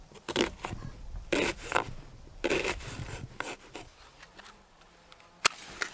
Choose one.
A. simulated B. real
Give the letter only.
B